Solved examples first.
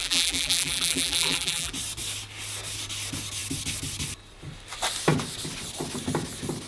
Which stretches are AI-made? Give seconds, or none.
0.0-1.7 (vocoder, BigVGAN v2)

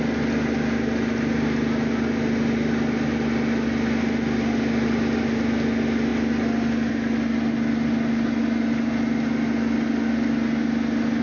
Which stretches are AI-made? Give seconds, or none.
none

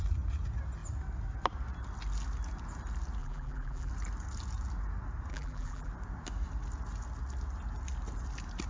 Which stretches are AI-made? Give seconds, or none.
3.2-3.9 (vocoder, BigVGAN v2); 5.3-5.9